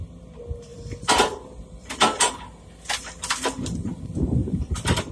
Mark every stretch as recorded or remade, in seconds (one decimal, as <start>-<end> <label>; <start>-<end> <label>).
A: 0.0-0.7 recorded; 0.7-2.3 remade; 2.3-4.4 recorded; 4.4-5.1 remade